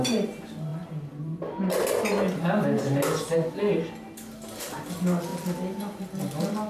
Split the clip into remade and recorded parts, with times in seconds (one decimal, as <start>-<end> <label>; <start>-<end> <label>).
0.0-6.7 recorded